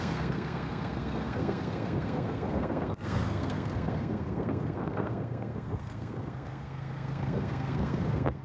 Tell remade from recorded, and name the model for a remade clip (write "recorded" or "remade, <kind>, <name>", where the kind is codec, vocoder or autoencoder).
remade, codec, SNAC